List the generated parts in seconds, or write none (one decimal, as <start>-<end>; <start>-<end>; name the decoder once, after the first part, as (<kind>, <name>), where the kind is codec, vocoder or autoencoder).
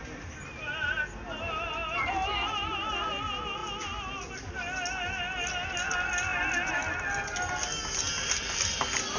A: none